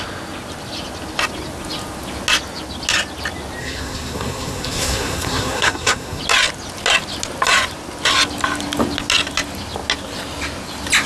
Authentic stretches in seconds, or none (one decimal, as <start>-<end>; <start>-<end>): 0.0-3.6; 6.2-11.1